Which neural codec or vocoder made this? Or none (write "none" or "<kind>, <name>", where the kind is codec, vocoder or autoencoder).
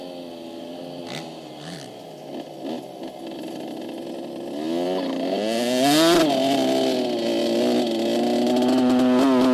none